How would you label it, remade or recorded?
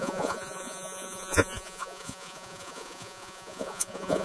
remade